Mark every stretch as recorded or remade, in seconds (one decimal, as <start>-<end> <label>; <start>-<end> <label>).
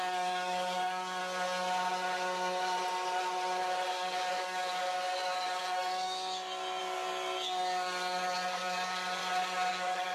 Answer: 0.0-1.2 remade; 1.2-3.9 recorded; 3.9-9.2 remade; 9.2-9.7 recorded; 9.7-10.1 remade